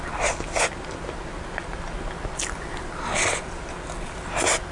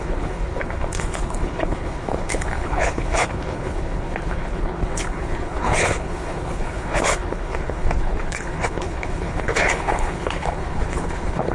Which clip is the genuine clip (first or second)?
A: first